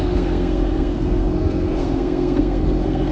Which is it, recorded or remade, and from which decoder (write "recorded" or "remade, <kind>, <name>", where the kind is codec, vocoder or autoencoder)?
remade, codec, SNAC